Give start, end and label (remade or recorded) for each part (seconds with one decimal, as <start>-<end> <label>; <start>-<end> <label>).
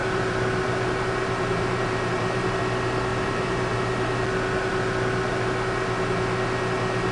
0.0-2.6 remade; 2.6-3.1 recorded; 3.1-3.7 remade; 3.7-7.1 recorded